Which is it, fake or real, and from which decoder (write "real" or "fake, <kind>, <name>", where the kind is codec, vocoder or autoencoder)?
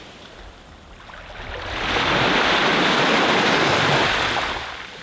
real